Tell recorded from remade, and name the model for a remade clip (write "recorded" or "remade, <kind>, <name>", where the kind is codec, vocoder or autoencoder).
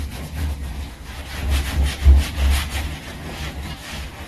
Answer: recorded